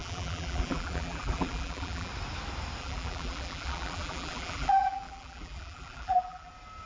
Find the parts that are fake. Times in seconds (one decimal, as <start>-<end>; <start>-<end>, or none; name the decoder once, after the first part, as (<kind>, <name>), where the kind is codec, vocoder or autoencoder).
0.0-2.1 (vocoder, BigVGAN v2); 2.8-6.5